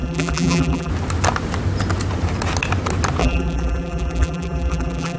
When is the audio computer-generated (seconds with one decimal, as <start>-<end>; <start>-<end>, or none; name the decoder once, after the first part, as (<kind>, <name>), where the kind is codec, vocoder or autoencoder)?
0.0-0.9 (vocoder, BigVGAN v2); 3.2-5.2